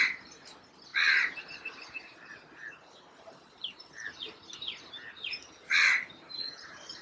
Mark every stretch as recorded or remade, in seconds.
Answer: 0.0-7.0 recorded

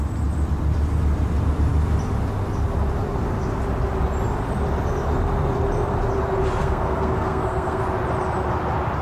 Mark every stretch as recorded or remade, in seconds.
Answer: 0.0-6.6 recorded; 6.6-7.8 remade; 7.8-9.0 recorded

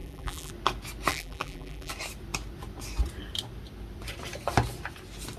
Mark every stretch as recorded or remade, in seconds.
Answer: 0.0-0.5 remade; 0.5-1.1 recorded; 1.1-1.9 remade; 1.9-5.4 recorded

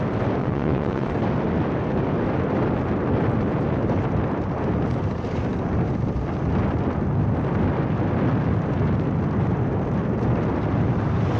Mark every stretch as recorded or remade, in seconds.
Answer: 0.0-0.4 recorded; 0.4-1.1 remade; 1.1-11.4 recorded

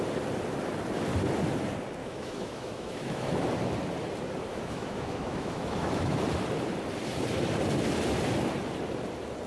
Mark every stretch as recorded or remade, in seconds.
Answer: 0.0-2.0 recorded; 2.0-3.3 remade; 3.3-4.5 recorded; 4.5-6.2 remade; 6.2-9.5 recorded